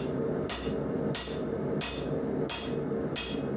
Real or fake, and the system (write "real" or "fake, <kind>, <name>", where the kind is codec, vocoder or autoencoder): real